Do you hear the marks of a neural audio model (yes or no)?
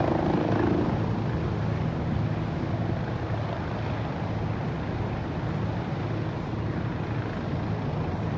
no